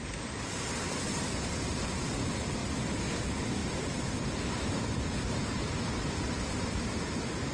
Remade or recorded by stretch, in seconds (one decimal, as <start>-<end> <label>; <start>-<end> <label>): 0.0-3.6 recorded; 3.6-5.6 remade; 5.6-7.5 recorded